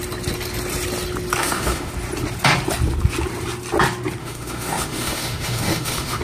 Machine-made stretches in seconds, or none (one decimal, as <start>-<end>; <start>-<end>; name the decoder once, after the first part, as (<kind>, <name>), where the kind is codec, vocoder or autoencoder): 1.4-1.9 (autoencoder, DAC-VAE); 4.2-6.2